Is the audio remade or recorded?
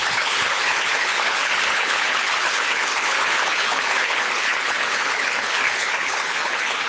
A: remade